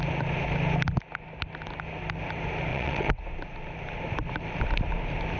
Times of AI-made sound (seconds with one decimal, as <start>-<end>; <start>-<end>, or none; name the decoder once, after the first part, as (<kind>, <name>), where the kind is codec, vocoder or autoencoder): 2.7-3.2 (vocoder, WaveNeXt)